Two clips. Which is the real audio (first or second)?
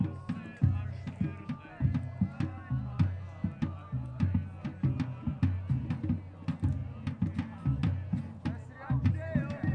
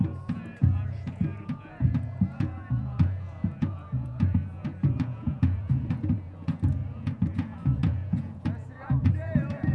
first